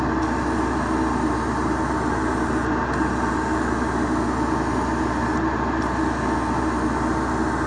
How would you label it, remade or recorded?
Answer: recorded